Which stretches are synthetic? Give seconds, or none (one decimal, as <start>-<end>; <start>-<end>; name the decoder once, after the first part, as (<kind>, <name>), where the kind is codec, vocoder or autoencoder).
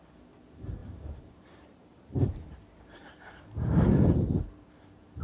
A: 0.8-3.9 (vocoder, BigVGAN v2)